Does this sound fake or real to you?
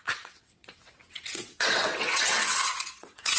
fake